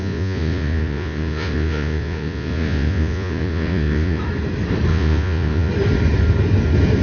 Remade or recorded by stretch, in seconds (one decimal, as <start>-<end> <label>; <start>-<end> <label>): 0.0-4.2 remade; 4.2-4.9 recorded; 4.9-5.7 remade; 5.7-7.0 recorded